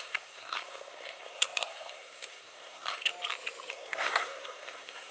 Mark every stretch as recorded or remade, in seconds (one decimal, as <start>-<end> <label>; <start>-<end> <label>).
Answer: 0.0-3.1 remade; 3.1-3.7 recorded; 3.7-5.1 remade